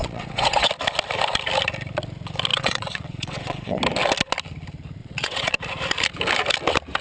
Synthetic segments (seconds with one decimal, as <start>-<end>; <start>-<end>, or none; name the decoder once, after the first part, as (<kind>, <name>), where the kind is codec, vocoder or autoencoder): 0.0-0.7 (vocoder, WaveNeXt); 2.5-3.8; 5.0-5.6